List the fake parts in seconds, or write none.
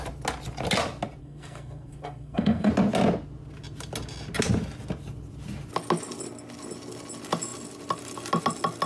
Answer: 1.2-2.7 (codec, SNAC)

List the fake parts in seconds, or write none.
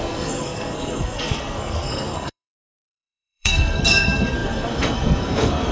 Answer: 0.0-5.7 (codec, SNAC)